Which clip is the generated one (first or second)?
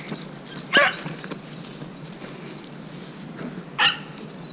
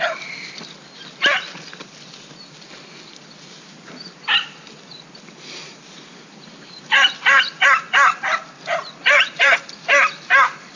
second